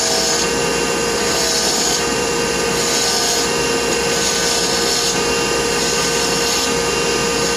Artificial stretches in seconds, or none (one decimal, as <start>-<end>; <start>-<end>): 1.0-2.3